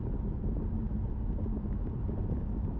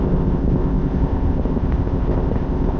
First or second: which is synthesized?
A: second